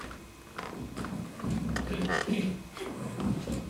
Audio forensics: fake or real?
real